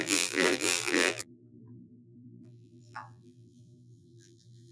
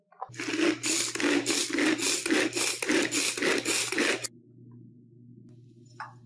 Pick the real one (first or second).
second